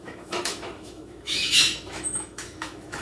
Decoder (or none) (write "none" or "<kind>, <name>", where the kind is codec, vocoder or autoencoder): autoencoder, DAC-VAE